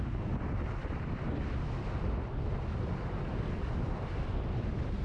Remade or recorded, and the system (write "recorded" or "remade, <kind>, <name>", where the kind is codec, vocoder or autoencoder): remade, vocoder, BigVGAN v2